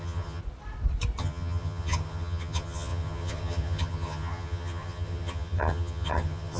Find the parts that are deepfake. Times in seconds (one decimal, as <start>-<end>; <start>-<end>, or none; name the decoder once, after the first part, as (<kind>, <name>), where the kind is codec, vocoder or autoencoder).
0.0-0.4 (vocoder, HiFi-GAN); 1.2-6.6